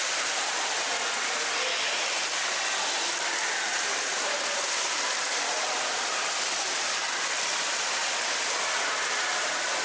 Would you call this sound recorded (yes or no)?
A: yes